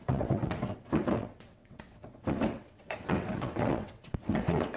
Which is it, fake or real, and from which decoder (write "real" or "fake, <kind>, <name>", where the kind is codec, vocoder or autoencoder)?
fake, vocoder, WaveNeXt